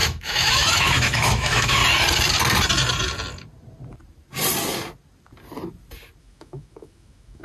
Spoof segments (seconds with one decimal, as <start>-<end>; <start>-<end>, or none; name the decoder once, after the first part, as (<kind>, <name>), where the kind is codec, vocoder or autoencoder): 0.0-1.8 (autoencoder, DAC-VAE); 6.2-7.4